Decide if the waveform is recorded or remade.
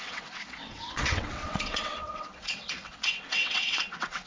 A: remade